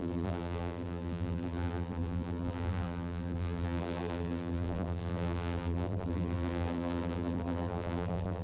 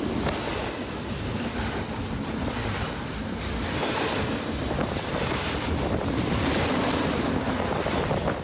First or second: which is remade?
first